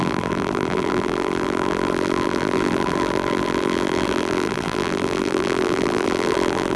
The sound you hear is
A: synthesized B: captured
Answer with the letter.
A